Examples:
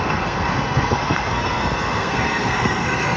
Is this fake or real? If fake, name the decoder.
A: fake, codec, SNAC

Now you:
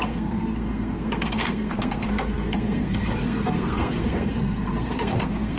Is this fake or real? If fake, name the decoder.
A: fake, codec, SNAC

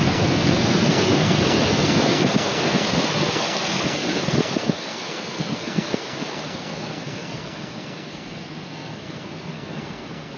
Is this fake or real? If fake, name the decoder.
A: fake, codec, SNAC